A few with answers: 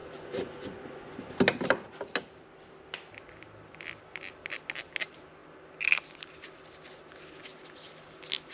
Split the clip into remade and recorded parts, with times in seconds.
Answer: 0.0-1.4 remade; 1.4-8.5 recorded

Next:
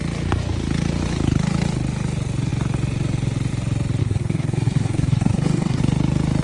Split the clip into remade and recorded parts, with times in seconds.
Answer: 0.0-4.0 recorded; 4.0-5.8 remade; 5.8-6.4 recorded

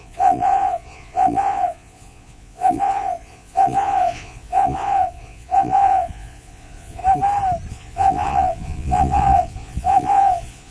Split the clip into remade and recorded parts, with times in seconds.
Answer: 0.0-7.0 remade; 7.0-7.7 recorded; 7.7-10.7 remade

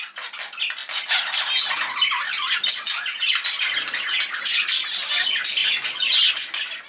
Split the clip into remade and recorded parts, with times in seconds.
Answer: 0.0-6.9 recorded

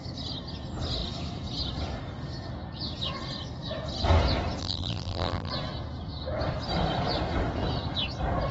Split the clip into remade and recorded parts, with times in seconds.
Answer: 0.0-4.6 recorded; 4.6-5.5 remade; 5.5-8.5 recorded

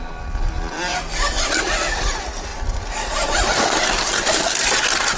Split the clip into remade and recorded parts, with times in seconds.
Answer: 0.0-5.2 recorded

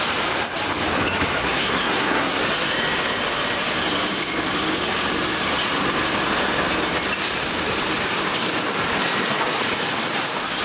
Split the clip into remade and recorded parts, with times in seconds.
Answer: 0.0-1.4 recorded; 1.4-2.4 remade; 2.4-10.6 recorded

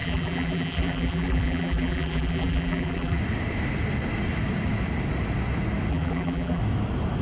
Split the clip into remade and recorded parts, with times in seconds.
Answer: 0.0-3.2 remade; 3.2-5.9 recorded; 5.9-6.6 remade; 6.6-7.2 recorded